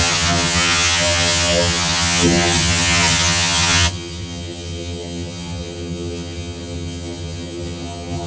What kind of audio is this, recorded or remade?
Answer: remade